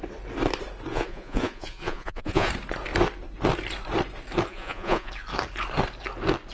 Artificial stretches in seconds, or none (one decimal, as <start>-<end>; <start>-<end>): 0.9-2.5; 4.5-5.1